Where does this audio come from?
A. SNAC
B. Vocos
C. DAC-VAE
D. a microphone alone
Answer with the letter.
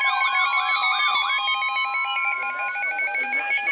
D